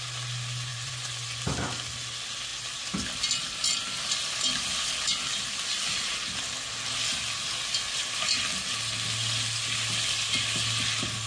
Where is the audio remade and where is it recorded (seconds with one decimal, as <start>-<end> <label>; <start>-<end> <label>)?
0.0-0.7 recorded; 0.7-1.4 remade; 1.4-11.3 recorded